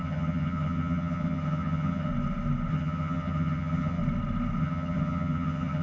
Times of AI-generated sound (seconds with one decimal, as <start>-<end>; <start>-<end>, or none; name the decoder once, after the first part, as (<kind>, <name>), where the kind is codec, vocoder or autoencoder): 0.0-2.1 (vocoder, HiFi-GAN); 2.7-4.0; 4.6-5.8